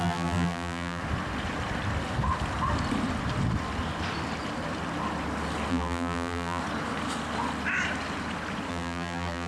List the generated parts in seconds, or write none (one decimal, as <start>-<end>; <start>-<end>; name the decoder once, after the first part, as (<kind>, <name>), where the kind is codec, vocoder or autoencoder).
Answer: 0.0-1.0 (vocoder, BigVGAN v2); 5.7-6.6; 8.7-9.5

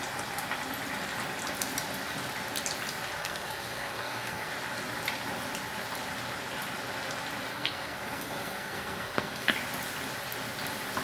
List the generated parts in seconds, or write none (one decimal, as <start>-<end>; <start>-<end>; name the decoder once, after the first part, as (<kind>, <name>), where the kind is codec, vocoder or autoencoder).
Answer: 3.2-4.5 (codec, SNAC); 7.5-9.5

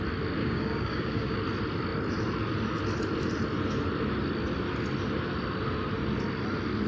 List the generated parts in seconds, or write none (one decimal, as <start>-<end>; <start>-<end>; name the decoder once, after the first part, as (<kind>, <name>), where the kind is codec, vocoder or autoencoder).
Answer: 0.4-1.4 (codec, DAC)

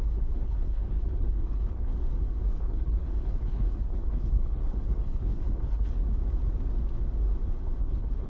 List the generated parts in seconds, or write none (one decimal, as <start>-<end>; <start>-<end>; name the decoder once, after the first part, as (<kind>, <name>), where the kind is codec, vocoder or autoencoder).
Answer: 0.0-1.9 (codec, HILCodec); 2.5-6.0; 7.8-8.3

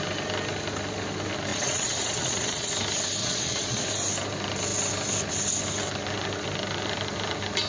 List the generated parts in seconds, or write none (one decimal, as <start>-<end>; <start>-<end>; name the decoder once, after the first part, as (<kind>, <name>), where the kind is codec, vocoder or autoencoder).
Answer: 1.5-2.7 (vocoder, Vocos); 3.2-3.8